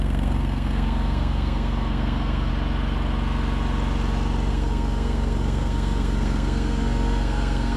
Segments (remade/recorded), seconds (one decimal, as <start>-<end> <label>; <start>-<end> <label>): 0.0-2.5 remade; 2.5-4.5 recorded; 4.5-7.8 remade